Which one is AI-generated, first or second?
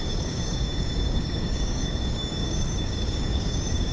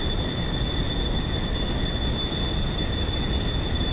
first